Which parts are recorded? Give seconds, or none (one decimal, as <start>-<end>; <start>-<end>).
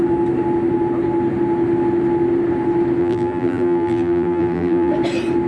0.0-3.0; 4.9-5.5